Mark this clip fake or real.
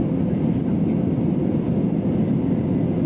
real